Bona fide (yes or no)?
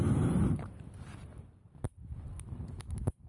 no